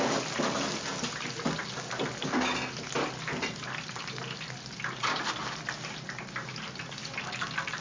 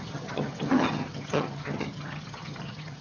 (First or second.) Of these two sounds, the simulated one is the second